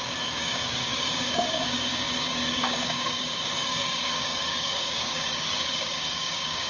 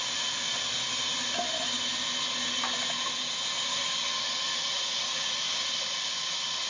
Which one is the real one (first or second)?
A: second